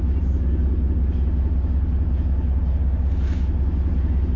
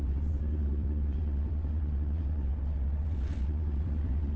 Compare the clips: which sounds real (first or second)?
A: first